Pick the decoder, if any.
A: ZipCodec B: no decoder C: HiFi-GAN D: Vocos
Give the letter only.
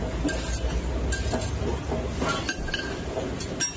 B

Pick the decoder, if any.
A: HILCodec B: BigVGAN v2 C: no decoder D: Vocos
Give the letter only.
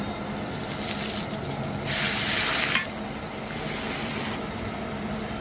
C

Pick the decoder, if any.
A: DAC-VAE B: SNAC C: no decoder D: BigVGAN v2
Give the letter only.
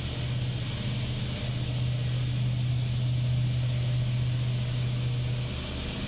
C